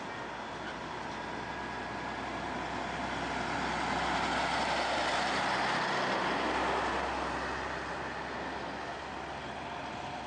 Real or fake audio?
real